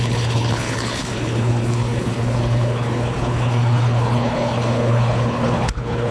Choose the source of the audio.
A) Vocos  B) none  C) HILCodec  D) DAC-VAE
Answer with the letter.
C